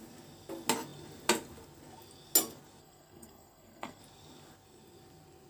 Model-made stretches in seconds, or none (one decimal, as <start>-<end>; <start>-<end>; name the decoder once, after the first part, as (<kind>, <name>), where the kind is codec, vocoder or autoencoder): 2.8-4.0 (codec, SNAC)